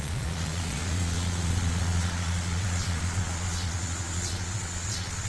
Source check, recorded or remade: remade